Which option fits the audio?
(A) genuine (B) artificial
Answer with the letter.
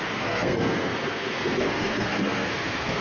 B